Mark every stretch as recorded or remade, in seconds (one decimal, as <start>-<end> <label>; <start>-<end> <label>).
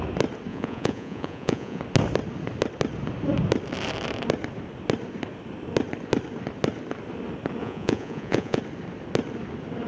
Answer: 0.0-0.5 recorded; 0.5-1.8 remade; 1.8-7.6 recorded; 7.6-8.6 remade; 8.6-9.9 recorded